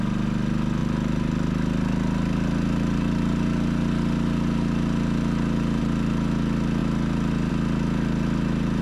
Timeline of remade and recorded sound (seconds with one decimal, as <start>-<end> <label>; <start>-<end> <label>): 0.0-8.8 recorded